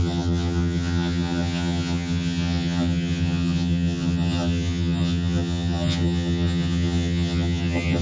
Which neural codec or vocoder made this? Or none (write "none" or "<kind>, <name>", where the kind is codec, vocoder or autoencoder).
vocoder, HiFi-GAN